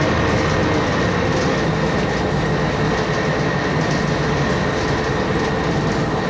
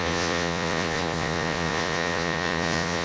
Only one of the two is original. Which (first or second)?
first